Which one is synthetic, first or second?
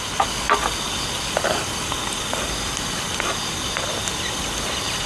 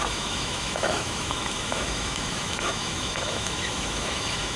second